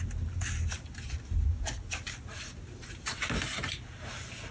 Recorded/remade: recorded